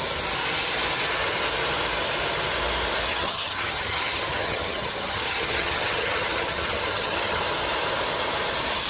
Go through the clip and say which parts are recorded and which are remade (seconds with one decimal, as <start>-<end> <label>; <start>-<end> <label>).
0.0-3.1 recorded; 3.1-7.4 remade; 7.4-8.9 recorded